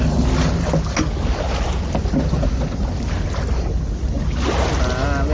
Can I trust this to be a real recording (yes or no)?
yes